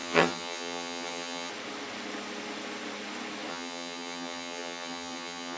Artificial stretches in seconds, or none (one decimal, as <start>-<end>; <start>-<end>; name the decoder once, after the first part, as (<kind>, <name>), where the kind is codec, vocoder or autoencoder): 0.0-1.5 (vocoder, HiFi-GAN); 3.5-5.6